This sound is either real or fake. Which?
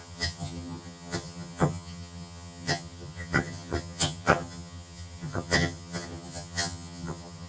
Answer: fake